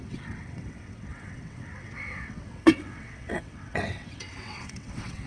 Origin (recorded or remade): remade